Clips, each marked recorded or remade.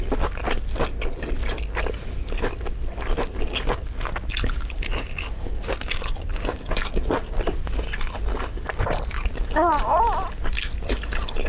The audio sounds recorded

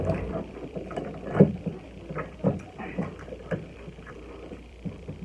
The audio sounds remade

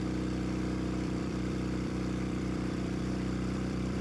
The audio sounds remade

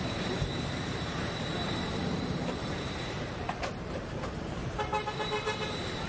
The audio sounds remade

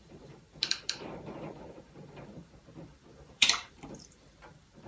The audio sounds remade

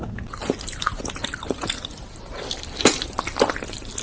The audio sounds recorded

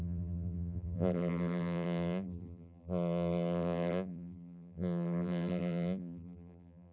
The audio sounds remade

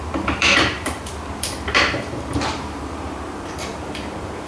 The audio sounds remade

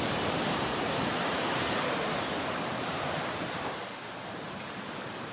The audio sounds remade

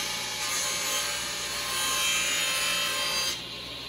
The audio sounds recorded